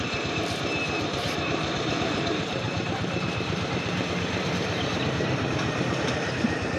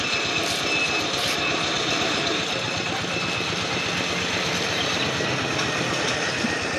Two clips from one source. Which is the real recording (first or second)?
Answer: second